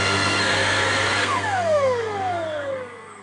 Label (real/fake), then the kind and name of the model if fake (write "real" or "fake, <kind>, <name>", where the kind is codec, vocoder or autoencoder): fake, codec, SNAC